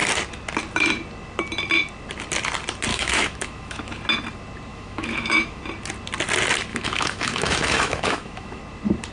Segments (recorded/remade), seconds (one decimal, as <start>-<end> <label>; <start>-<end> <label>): 0.0-2.9 recorded; 2.9-4.0 remade; 4.0-4.7 recorded; 4.7-5.6 remade; 5.6-6.7 recorded; 6.7-8.6 remade; 8.6-9.1 recorded